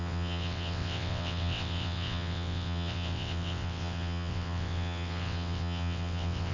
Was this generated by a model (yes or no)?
yes